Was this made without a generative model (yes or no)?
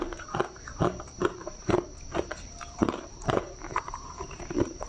no